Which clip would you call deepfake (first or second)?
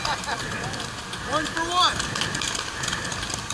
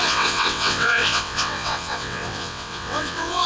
second